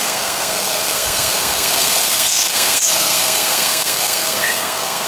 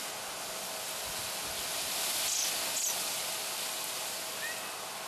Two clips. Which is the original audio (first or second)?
second